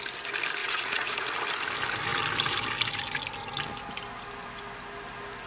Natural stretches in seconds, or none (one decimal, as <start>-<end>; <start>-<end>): 0.0-0.6; 1.3-5.5